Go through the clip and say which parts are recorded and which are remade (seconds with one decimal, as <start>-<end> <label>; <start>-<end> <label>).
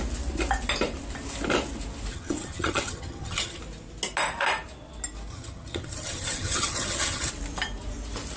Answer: 0.0-2.1 recorded; 2.1-3.6 remade; 3.6-5.3 recorded; 5.3-7.3 remade; 7.3-8.4 recorded